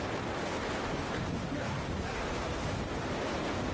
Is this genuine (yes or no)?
yes